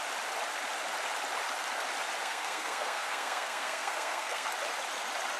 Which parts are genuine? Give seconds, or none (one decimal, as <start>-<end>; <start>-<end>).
0.0-2.2; 4.5-5.4